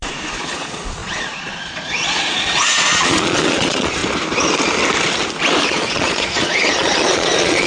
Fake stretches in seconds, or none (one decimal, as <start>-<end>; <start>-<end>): 0.0-4.0; 5.7-7.7

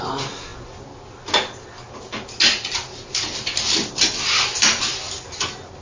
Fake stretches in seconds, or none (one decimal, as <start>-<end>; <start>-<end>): none

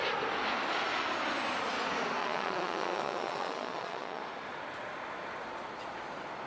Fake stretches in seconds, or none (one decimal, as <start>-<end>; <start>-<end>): 2.2-4.2

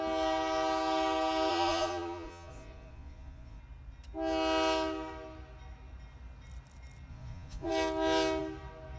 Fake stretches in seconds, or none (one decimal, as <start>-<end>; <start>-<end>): 1.5-3.6; 7.1-7.7